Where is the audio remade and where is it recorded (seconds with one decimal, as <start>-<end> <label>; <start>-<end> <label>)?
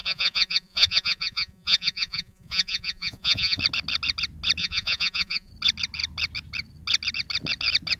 0.0-3.6 remade; 3.6-4.6 recorded; 4.6-5.5 remade; 5.5-8.0 recorded